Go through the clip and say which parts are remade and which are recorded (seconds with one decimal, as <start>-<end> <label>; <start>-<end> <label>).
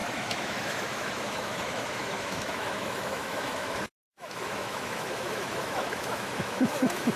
0.0-7.2 remade